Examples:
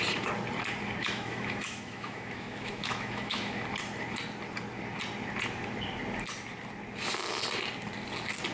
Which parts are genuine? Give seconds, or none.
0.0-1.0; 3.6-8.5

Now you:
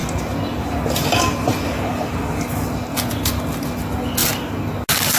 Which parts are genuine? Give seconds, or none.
0.0-5.2

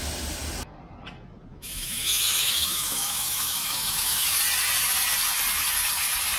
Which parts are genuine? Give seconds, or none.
0.0-1.5; 4.4-6.4

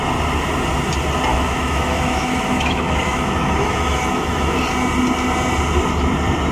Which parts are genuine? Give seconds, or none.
0.0-1.3; 4.6-6.5